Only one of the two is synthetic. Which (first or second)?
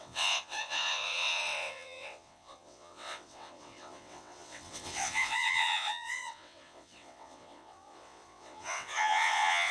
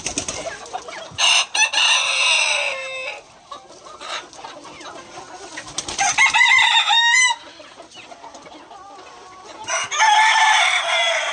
first